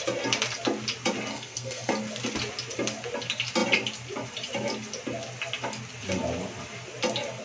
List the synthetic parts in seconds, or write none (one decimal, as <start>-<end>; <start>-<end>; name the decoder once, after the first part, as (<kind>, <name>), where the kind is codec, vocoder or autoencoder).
1.3-1.9 (codec, SNAC)